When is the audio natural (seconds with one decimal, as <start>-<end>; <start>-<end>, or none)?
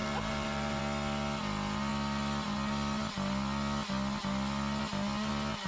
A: 0.8-5.7